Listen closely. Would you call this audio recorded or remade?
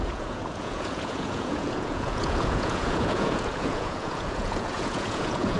remade